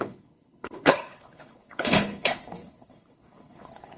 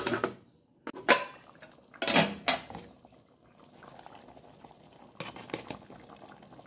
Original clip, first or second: second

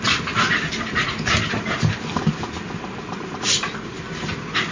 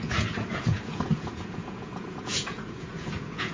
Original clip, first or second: first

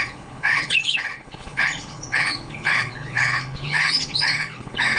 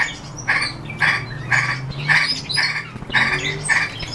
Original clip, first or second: second